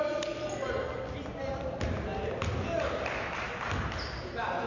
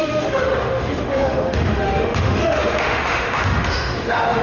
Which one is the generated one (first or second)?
second